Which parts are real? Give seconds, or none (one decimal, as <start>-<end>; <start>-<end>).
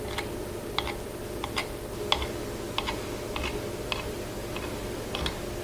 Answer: 0.0-5.6